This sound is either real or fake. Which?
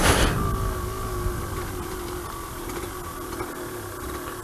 real